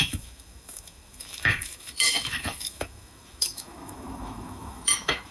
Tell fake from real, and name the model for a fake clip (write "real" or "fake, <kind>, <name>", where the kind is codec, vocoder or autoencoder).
fake, autoencoder, DAC-VAE